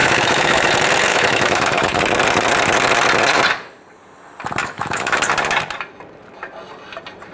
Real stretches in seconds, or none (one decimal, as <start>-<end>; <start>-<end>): 0.7-1.1; 2.0-4.6; 5.2-7.3